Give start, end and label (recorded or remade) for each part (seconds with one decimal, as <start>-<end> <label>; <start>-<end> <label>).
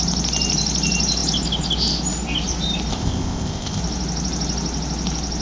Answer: 0.0-2.9 recorded; 2.9-3.8 remade; 3.8-5.4 recorded